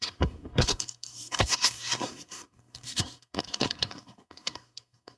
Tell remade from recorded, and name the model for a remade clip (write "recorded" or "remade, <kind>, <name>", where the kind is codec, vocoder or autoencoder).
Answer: remade, codec, SNAC